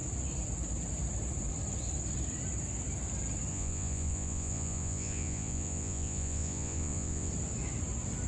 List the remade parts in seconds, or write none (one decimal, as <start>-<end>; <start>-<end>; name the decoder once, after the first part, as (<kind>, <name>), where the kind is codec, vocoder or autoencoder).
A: 3.5-7.3 (vocoder, Vocos)